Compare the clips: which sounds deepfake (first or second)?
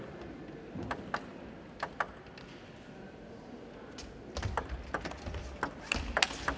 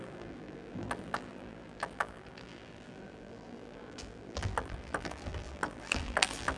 second